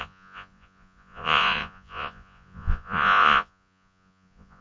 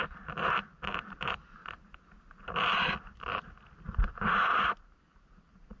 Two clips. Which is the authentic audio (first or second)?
second